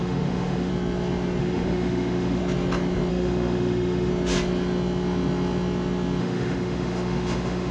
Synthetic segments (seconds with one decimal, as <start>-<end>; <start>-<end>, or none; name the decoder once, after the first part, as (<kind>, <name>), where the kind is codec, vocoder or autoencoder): 0.0-0.7 (autoencoder, DAC-VAE); 1.4-2.4; 3.1-4.1; 6.2-7.7